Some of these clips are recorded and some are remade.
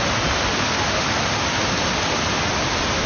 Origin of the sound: recorded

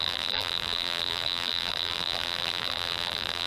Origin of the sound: remade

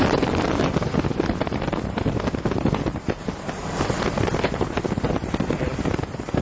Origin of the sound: recorded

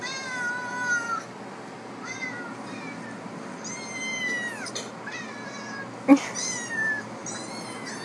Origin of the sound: recorded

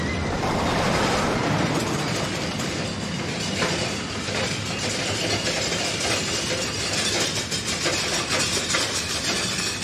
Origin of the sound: recorded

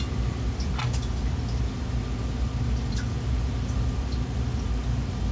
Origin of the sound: recorded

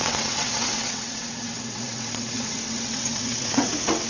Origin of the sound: remade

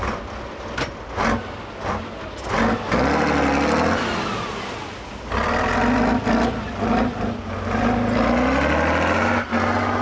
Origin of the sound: recorded